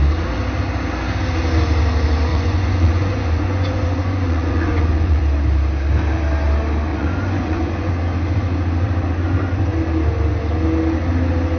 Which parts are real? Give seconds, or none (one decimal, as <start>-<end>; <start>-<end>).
0.0-2.3; 5.2-6.9; 7.9-11.6